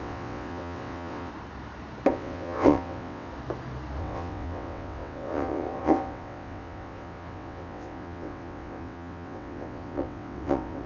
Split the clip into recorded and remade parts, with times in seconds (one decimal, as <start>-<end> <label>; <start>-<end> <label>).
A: 0.0-1.3 remade; 1.3-2.1 recorded; 2.1-3.3 remade; 3.3-4.0 recorded; 4.0-10.9 remade